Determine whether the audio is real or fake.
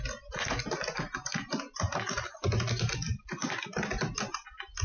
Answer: real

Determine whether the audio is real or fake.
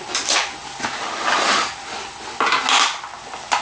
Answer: real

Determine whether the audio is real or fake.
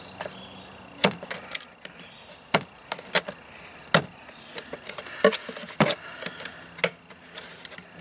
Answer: real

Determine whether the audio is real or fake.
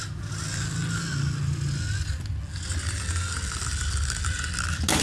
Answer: real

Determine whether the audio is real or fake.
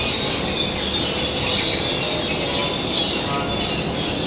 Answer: real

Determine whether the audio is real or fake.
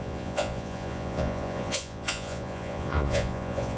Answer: fake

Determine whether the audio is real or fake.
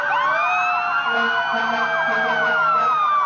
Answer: real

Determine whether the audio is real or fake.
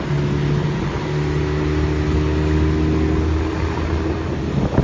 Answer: real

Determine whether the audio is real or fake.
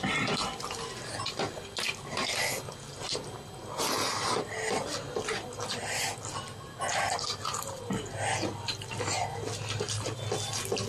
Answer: real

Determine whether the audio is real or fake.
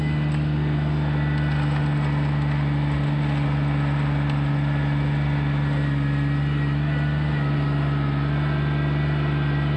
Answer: real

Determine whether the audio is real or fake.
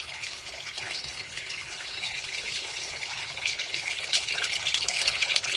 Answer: fake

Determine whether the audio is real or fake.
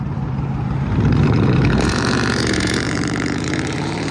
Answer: fake